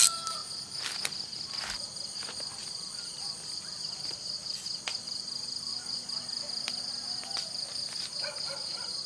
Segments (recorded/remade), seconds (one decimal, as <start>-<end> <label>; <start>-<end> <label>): 0.0-2.6 recorded; 2.6-6.1 remade; 6.1-9.1 recorded